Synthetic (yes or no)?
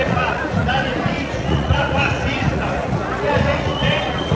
yes